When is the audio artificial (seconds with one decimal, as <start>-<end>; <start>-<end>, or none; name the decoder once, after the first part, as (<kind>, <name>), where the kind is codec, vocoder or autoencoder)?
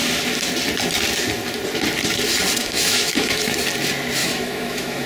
2.6-3.6 (autoencoder, DAC-VAE); 4.2-5.1